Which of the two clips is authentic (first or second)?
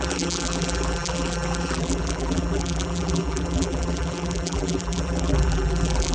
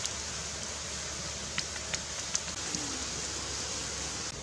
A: second